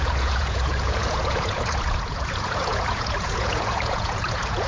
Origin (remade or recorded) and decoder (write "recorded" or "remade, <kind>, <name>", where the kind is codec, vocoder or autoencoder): remade, vocoder, Vocos